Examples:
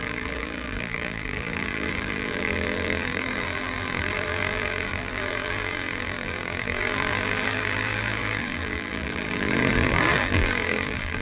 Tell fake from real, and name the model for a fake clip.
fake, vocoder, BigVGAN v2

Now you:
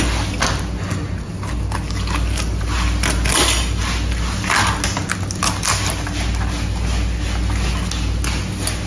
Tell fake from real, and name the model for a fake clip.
real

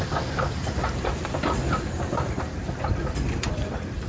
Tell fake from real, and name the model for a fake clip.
fake, vocoder, BigVGAN v2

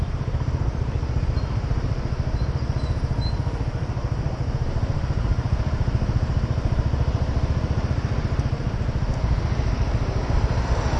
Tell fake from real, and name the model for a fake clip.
fake, vocoder, BigVGAN v2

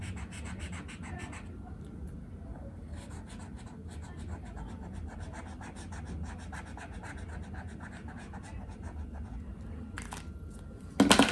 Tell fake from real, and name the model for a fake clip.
real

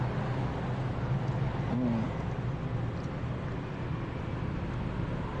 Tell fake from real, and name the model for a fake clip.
real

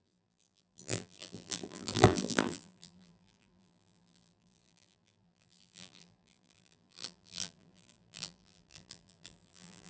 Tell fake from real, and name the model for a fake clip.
fake, vocoder, BigVGAN v2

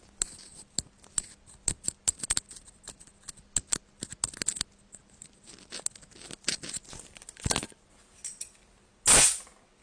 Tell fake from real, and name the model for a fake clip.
real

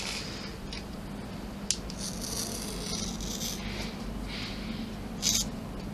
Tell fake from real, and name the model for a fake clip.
real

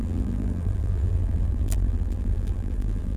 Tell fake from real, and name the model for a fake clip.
fake, vocoder, BigVGAN v2